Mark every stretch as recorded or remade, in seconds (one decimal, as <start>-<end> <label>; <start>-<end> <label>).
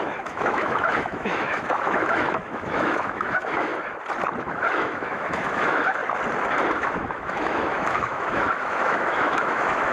0.0-3.7 remade; 3.7-4.4 recorded; 4.4-6.0 remade; 6.0-6.7 recorded; 6.7-9.9 remade